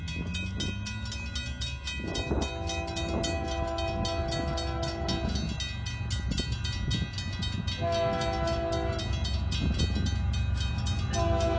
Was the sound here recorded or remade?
recorded